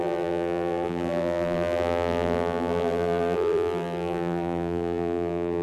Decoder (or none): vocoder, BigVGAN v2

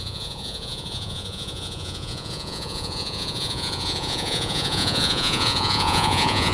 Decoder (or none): vocoder, Vocos